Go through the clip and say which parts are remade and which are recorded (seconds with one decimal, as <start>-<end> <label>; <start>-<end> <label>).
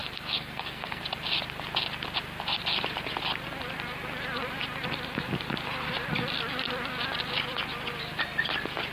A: 0.0-1.0 remade; 1.0-8.9 recorded